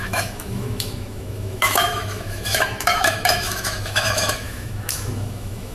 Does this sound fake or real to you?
fake